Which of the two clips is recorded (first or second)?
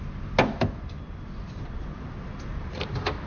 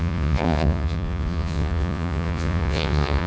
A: first